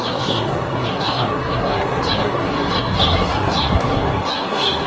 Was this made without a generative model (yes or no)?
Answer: no